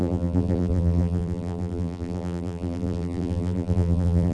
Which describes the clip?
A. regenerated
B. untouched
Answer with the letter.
A